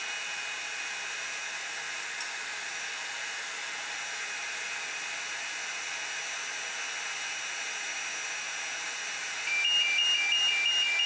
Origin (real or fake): real